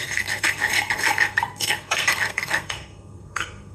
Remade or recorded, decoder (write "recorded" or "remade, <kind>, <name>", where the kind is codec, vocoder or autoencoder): remade, codec, SNAC